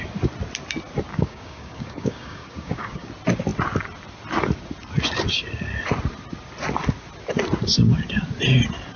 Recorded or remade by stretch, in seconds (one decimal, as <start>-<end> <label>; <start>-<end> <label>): 0.0-1.1 recorded; 1.1-3.1 remade; 3.1-9.0 recorded